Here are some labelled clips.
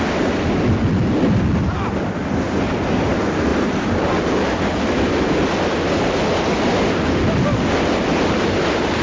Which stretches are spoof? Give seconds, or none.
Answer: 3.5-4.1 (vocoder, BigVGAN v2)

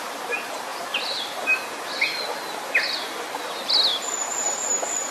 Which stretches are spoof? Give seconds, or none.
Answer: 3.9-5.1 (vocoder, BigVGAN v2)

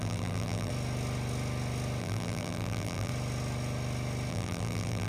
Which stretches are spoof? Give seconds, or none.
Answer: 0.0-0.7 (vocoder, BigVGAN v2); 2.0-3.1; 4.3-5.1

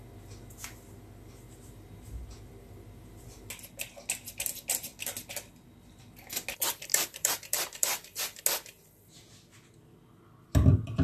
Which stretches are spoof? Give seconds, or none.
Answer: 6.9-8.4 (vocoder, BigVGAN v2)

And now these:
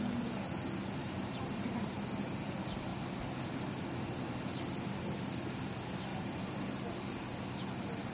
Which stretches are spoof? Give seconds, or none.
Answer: 1.0-2.4 (vocoder, BigVGAN v2); 6.1-6.7

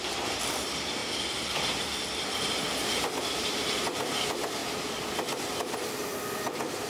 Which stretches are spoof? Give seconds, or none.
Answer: none